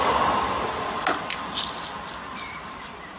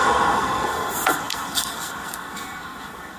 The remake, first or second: second